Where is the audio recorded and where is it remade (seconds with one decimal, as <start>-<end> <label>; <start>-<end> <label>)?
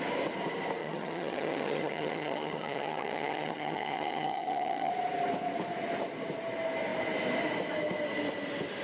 0.0-0.8 recorded; 0.8-4.9 remade; 4.9-8.8 recorded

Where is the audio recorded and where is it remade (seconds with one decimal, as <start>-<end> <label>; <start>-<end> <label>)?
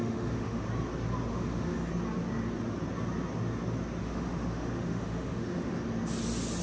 0.0-0.6 remade; 0.6-1.3 recorded; 1.3-1.9 remade; 1.9-4.0 recorded; 4.0-5.8 remade; 5.8-6.6 recorded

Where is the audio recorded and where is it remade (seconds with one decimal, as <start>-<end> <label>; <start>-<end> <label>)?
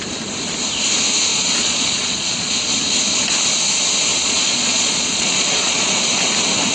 0.0-1.3 recorded; 1.3-2.6 remade; 2.6-4.1 recorded; 4.1-6.0 remade; 6.0-6.7 recorded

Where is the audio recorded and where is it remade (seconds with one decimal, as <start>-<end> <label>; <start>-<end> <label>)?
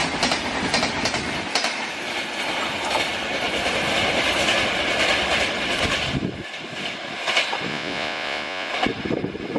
0.0-7.7 recorded; 7.7-8.7 remade; 8.7-9.6 recorded